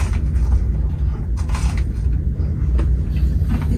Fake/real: real